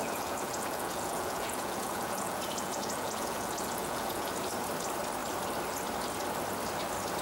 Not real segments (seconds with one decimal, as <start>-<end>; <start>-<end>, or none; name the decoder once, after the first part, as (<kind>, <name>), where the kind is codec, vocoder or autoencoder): 0.0-4.3 (vocoder, Vocos)